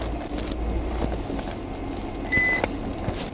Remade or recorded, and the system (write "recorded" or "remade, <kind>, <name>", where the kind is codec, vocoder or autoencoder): recorded